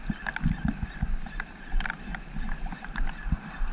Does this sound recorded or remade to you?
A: recorded